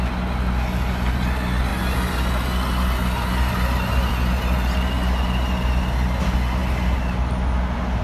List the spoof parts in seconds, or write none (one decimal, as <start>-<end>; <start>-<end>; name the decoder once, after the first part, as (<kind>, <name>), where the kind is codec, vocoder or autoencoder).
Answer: none